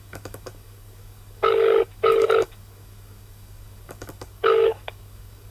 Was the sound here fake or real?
fake